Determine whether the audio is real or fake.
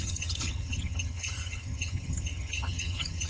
fake